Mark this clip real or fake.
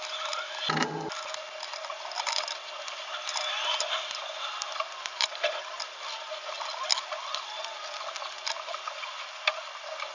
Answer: real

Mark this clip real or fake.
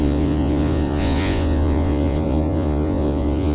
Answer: fake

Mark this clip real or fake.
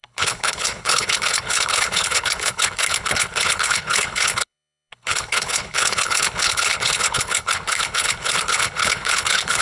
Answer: fake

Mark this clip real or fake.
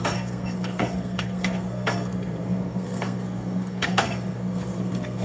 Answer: fake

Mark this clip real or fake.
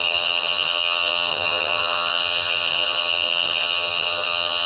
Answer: fake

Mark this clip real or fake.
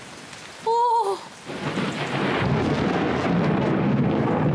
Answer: real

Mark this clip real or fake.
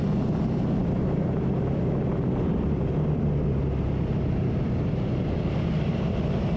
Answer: fake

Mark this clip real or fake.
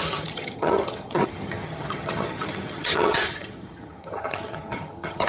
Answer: fake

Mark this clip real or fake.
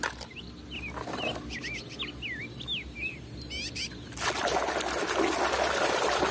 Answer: real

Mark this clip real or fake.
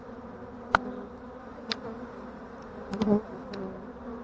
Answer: real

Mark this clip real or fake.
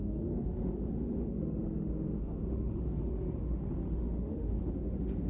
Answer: fake